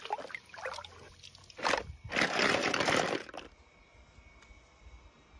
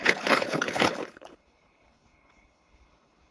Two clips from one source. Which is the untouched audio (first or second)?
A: first